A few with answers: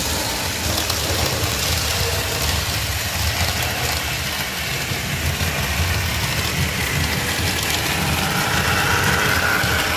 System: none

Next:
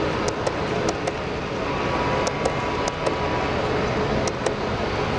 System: none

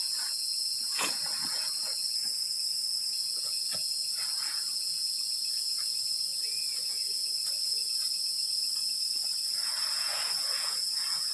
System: vocoder, Vocos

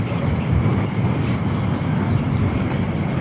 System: none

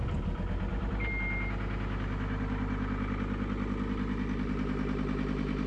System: none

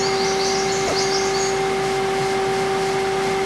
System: none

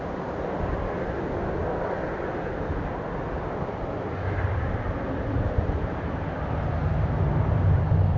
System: none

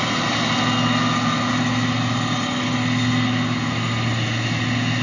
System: none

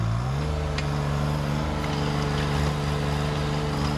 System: none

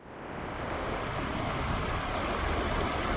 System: none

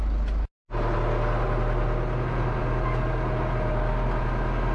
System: none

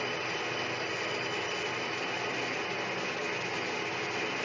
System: none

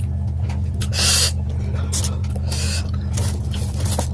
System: none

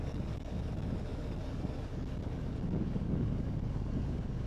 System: codec, DAC